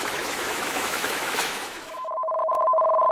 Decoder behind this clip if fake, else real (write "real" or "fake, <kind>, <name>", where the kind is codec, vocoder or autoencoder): fake, autoencoder, DAC-VAE